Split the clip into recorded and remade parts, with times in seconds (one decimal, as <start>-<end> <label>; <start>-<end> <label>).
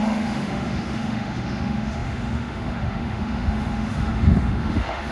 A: 0.0-5.1 remade